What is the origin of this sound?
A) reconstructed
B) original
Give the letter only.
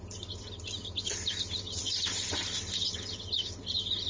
B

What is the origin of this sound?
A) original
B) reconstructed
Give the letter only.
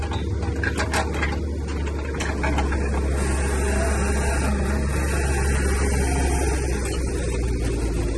A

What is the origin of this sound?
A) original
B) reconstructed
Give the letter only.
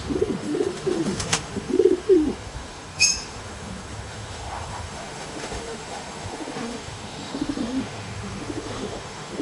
B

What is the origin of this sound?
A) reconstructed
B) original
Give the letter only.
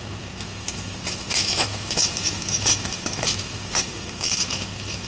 A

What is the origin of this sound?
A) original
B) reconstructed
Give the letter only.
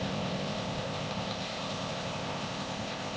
B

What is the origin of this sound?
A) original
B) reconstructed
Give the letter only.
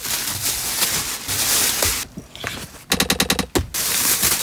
A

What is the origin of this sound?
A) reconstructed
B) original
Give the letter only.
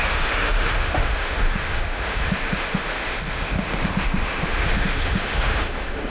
A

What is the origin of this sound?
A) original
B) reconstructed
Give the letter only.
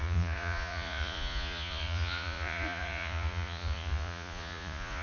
B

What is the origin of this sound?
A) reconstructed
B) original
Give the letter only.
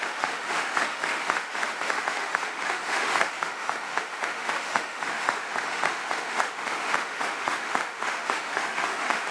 A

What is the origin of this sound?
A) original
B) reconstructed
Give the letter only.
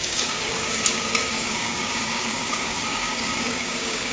B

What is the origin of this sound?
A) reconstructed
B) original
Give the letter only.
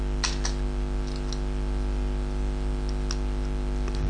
B